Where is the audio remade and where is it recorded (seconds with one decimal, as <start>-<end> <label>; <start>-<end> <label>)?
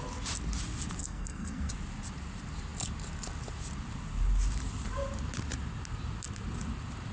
0.0-1.0 recorded; 1.0-1.7 remade; 1.7-7.1 recorded